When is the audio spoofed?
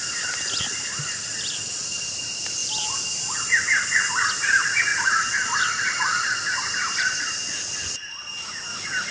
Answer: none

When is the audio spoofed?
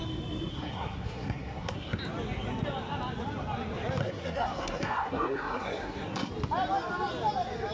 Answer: 0.5-2.0 (codec, SNAC); 4.0-6.3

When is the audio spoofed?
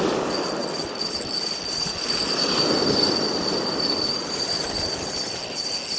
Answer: none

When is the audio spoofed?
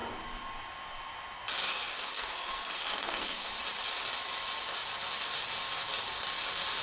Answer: 1.7-3.5 (codec, SNAC)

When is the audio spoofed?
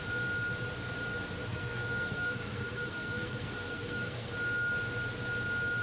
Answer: 1.5-4.3 (codec, SNAC)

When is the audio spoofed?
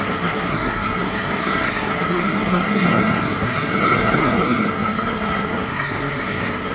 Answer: 0.0-6.7 (codec, SNAC)